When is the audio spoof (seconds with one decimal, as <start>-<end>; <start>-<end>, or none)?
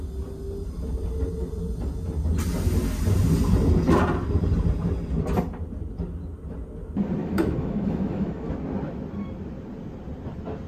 7.2-8.5